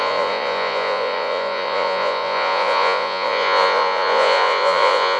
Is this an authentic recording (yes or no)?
no